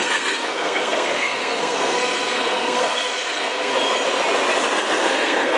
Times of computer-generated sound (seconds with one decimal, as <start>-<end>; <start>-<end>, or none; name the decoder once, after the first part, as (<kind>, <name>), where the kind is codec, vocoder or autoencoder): 0.0-3.7 (codec, SNAC); 4.8-5.6